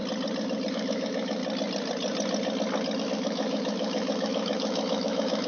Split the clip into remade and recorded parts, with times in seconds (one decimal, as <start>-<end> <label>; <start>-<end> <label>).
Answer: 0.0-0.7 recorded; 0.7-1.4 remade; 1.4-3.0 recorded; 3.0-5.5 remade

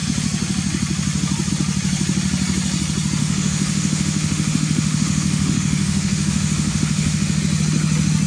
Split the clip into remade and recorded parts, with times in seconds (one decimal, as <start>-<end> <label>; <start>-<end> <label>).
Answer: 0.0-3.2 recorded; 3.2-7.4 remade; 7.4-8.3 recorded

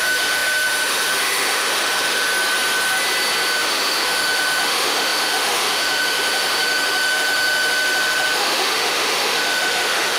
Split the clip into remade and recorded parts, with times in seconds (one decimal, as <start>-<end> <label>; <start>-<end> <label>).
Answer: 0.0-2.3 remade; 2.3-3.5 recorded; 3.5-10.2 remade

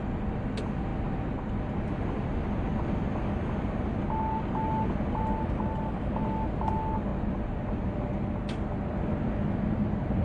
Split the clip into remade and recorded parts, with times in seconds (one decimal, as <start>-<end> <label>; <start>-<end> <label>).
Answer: 0.0-10.2 recorded